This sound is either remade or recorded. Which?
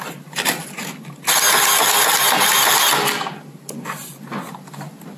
recorded